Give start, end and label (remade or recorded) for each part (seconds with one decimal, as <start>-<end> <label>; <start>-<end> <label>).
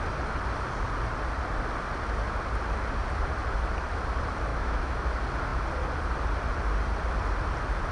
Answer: 0.0-4.5 recorded; 4.5-5.1 remade; 5.1-7.9 recorded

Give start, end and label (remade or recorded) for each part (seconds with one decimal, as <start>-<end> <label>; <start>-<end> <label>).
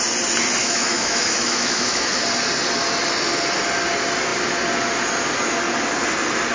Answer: 0.0-0.6 recorded; 0.6-2.2 remade; 2.2-6.5 recorded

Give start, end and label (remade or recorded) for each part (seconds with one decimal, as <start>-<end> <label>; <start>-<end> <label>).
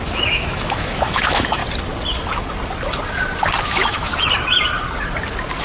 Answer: 0.0-1.6 remade; 1.6-3.6 recorded; 3.6-4.1 remade; 4.1-5.6 recorded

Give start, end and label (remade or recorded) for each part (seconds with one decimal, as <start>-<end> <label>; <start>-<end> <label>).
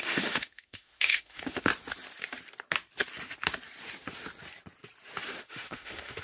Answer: 0.0-1.7 remade; 1.7-5.4 recorded; 5.4-6.2 remade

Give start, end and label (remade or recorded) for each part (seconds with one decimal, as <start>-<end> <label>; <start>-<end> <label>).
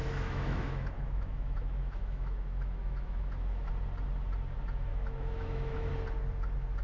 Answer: 0.0-3.7 remade; 3.7-4.9 recorded; 4.9-5.9 remade; 5.9-6.8 recorded